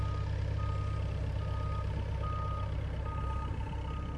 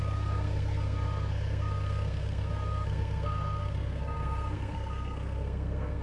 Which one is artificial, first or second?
second